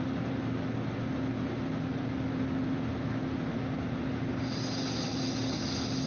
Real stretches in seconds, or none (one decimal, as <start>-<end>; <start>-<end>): 0.0-6.1